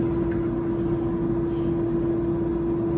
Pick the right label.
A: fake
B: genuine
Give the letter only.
B